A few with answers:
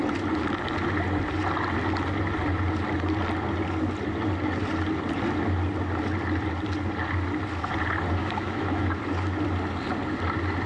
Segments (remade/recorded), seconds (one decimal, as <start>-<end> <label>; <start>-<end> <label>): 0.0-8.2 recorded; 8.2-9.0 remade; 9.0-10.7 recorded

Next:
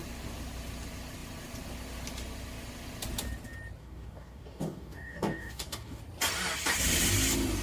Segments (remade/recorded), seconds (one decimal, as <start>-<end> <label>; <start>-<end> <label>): 0.0-3.8 recorded; 3.8-6.0 remade; 6.0-7.6 recorded

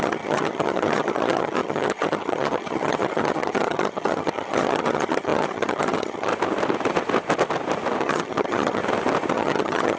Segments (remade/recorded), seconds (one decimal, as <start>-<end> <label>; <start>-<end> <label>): 0.0-6.3 remade; 6.3-8.0 recorded; 8.0-8.8 remade; 8.8-9.3 recorded; 9.3-10.0 remade

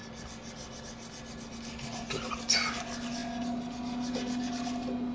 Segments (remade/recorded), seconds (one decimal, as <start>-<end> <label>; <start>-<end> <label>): 0.0-5.1 recorded

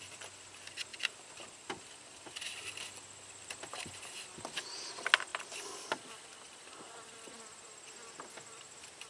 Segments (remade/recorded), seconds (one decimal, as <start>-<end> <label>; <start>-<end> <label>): 0.0-0.9 recorded; 0.9-2.7 remade; 2.7-9.1 recorded

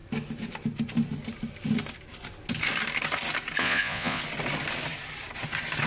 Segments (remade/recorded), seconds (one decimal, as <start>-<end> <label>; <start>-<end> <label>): 0.0-3.6 recorded; 3.6-4.2 remade; 4.2-5.9 recorded

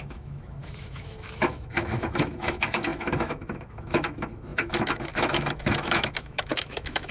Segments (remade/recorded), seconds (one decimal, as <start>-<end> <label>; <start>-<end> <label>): 0.0-7.1 remade

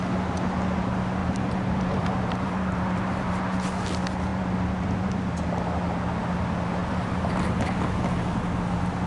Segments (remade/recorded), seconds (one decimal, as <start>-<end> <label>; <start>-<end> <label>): 0.0-1.2 recorded; 1.2-3.4 remade; 3.4-6.8 recorded; 6.8-8.0 remade; 8.0-9.1 recorded